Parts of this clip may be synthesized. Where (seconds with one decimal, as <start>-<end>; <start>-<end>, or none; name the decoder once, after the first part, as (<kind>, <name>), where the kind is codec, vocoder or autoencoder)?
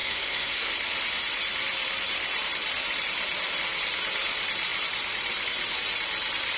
0.0-0.7 (codec, SNAC)